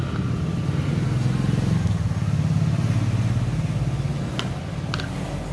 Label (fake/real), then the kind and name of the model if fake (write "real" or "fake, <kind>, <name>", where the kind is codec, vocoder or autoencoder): real